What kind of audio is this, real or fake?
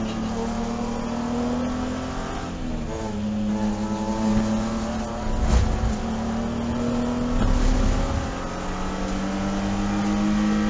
real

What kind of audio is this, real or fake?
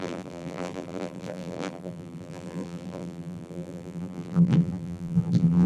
fake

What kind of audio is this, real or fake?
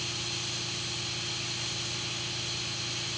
real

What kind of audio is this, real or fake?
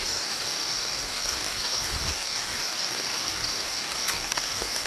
fake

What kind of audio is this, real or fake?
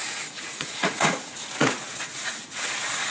fake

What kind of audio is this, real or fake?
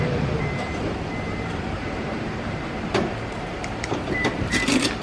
fake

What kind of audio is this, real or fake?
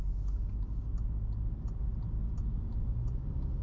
real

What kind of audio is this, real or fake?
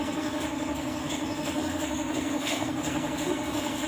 fake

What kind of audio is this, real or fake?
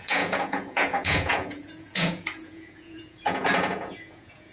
fake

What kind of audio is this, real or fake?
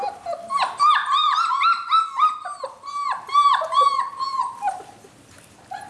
real